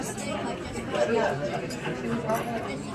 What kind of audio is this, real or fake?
real